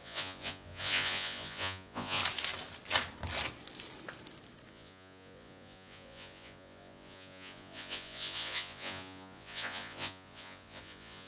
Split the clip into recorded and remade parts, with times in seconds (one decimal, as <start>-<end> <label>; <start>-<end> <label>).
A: 0.0-2.2 remade; 2.2-4.7 recorded; 4.7-11.3 remade